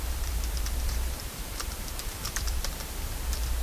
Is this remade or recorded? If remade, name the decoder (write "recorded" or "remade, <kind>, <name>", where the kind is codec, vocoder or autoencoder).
remade, vocoder, BigVGAN v2